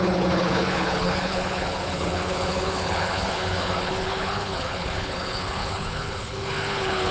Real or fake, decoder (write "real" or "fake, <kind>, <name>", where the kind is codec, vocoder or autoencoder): fake, codec, HILCodec